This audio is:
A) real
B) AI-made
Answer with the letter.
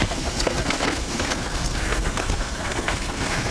B